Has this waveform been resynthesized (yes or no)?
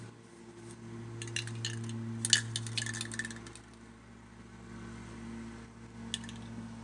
no